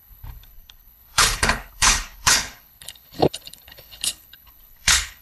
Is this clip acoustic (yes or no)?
no